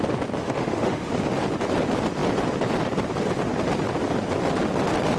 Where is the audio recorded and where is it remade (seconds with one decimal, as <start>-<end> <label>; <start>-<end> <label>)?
0.0-0.4 recorded; 0.4-1.1 remade; 1.1-5.2 recorded